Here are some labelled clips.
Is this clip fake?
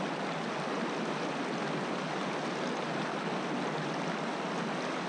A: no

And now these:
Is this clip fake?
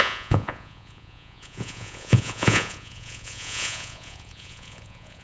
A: yes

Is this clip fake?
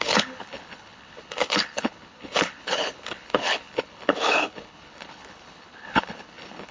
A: yes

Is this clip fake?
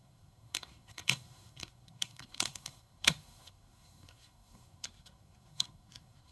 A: yes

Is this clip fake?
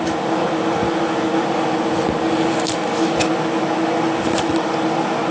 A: no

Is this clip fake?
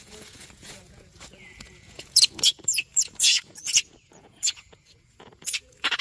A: yes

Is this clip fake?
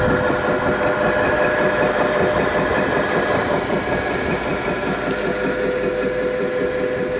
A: no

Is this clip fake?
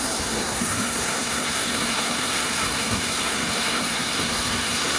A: yes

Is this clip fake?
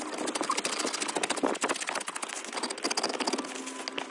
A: no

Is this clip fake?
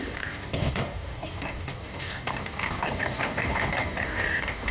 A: yes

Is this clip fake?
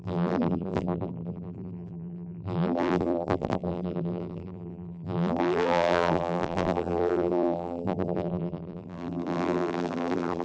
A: yes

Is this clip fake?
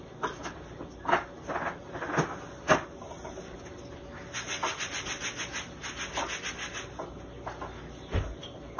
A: no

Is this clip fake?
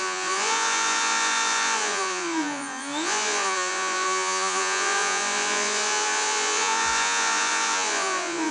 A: yes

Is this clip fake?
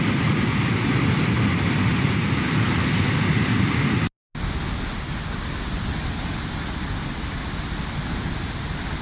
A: no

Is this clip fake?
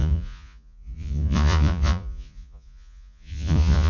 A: yes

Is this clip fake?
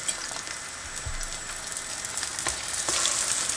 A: no